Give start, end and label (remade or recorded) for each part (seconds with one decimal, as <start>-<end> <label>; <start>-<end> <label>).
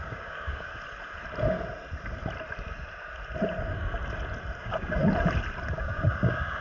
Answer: 0.0-0.7 remade; 0.7-4.6 recorded; 4.6-5.0 remade; 5.0-5.7 recorded; 5.7-6.6 remade